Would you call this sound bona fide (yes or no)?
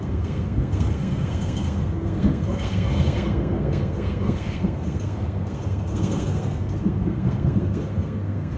no